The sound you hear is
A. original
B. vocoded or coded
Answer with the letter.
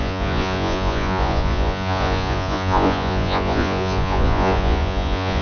B